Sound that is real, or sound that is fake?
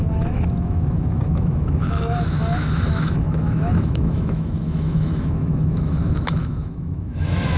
fake